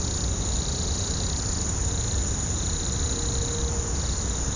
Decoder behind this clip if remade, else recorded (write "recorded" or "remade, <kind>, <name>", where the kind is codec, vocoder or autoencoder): recorded